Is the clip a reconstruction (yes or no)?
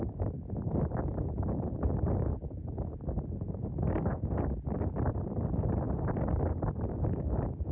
no